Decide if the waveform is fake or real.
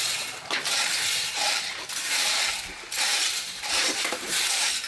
fake